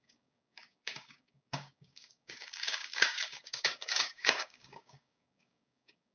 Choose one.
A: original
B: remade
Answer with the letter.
B